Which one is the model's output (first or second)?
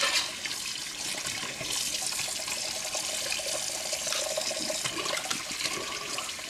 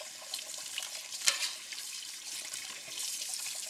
second